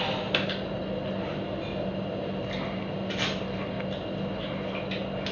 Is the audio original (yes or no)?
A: yes